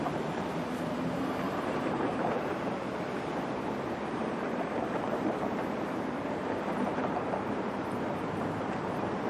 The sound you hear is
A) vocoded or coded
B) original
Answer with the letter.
A